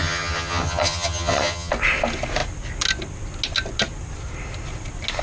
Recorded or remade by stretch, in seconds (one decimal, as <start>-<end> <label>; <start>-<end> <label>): 0.0-1.7 remade; 1.7-5.2 recorded